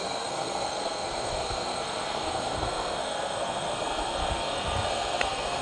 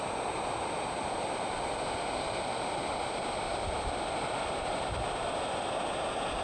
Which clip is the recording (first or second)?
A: second